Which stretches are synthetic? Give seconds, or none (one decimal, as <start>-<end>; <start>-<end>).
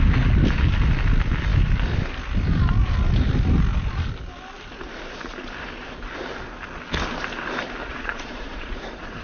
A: 7.8-9.2